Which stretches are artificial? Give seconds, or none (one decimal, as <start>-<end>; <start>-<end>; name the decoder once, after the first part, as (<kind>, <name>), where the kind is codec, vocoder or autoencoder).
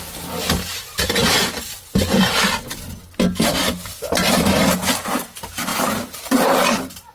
1.2-2.4 (vocoder, BigVGAN v2); 5.7-6.6